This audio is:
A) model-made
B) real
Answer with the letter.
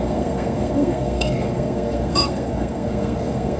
A